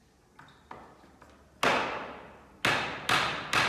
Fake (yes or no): no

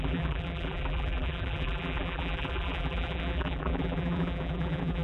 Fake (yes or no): yes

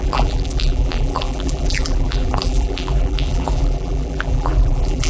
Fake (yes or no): yes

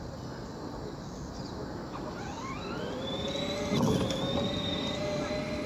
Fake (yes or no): no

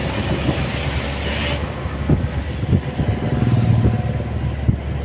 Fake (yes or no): no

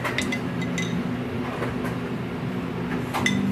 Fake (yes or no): no